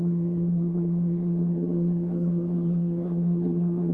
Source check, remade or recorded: remade